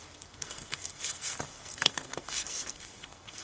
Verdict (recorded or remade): remade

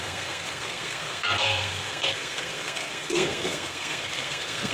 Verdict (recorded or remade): remade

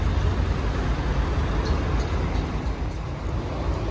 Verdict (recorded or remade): recorded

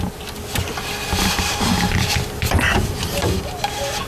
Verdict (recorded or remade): recorded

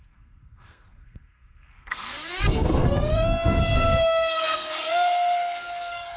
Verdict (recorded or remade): remade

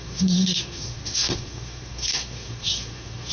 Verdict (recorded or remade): remade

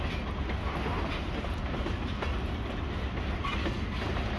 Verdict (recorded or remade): recorded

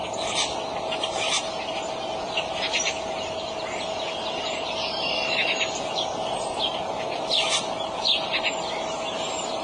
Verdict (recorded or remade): recorded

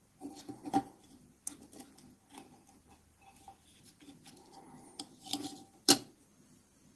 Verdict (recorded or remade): recorded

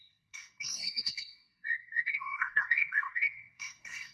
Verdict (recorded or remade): remade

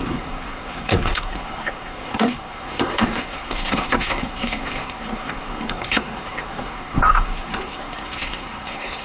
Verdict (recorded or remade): remade